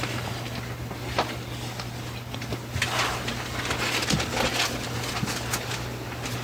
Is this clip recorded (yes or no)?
yes